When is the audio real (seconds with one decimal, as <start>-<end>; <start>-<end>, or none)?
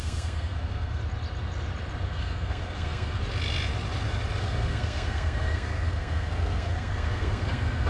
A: 1.0-2.0; 3.2-4.4